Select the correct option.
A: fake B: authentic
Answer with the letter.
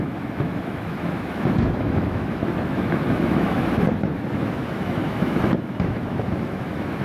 A